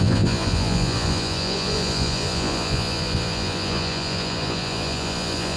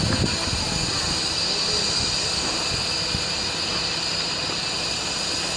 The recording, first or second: second